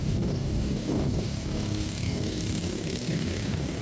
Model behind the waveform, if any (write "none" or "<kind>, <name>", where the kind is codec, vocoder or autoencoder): codec, DAC